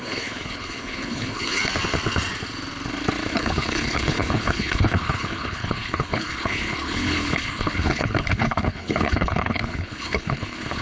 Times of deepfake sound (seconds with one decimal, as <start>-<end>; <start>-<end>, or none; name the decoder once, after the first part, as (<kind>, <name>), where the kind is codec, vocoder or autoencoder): 0.0-1.6 (codec, HILCodec); 3.3-10.8